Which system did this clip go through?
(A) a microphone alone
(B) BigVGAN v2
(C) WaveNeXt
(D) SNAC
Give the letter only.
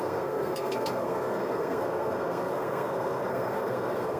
D